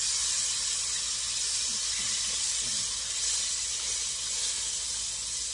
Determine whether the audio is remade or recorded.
recorded